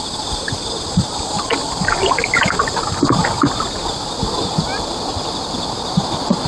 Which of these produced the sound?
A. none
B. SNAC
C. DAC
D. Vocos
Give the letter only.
A